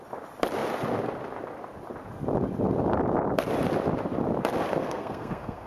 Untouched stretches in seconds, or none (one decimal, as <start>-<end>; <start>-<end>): 0.0-4.8